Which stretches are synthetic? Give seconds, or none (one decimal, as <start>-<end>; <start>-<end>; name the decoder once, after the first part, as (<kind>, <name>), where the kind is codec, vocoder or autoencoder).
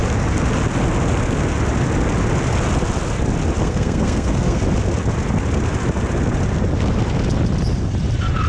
3.6-4.6 (codec, SNAC)